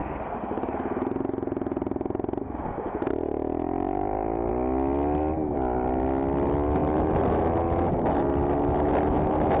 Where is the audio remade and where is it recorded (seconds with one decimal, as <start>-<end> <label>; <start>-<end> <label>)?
0.0-9.6 recorded